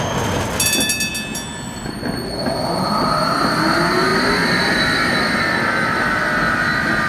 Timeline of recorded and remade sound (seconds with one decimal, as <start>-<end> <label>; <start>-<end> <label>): 0.0-7.1 recorded